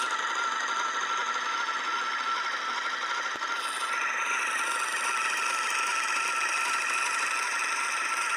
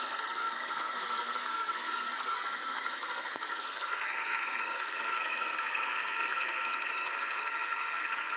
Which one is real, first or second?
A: first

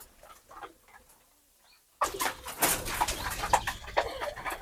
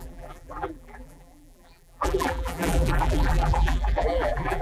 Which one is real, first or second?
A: first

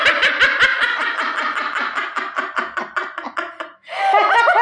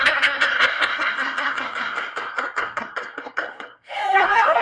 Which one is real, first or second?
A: first